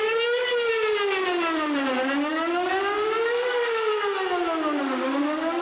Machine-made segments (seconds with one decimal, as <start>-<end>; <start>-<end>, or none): 0.0-0.5; 2.3-3.9; 4.8-5.6